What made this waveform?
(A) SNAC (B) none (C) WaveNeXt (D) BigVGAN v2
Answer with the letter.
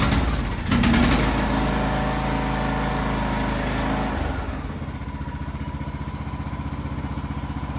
B